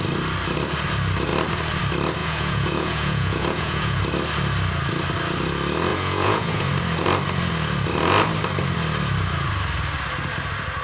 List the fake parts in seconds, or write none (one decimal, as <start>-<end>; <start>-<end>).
2.2-4.0; 5.9-6.7